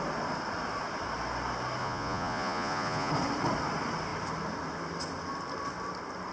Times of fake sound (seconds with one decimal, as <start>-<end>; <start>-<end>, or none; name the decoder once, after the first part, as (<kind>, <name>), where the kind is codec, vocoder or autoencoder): 1.8-3.1 (vocoder, Vocos)